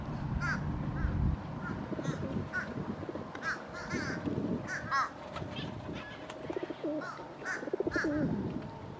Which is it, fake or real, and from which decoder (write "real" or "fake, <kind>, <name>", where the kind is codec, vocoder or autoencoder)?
real